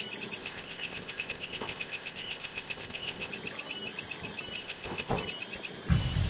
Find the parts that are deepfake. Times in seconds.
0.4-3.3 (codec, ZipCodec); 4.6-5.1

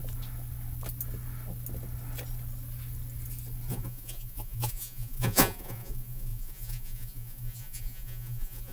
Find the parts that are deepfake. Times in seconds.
3.7-8.7 (vocoder, Vocos)

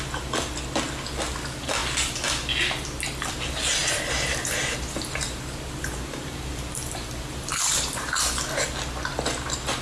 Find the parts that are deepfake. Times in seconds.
3.8-8.3 (vocoder, BigVGAN v2)